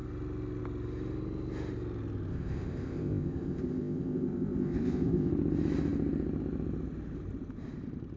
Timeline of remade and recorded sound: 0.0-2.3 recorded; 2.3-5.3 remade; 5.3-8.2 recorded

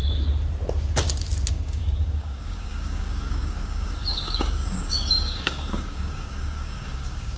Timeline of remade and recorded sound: 0.0-1.5 recorded; 1.5-7.4 remade

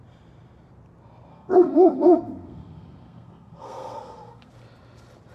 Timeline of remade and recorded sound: 0.0-1.3 recorded; 1.3-4.5 remade; 4.5-5.3 recorded